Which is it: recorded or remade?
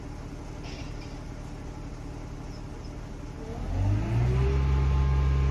recorded